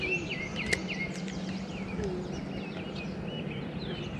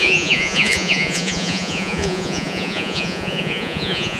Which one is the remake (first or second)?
second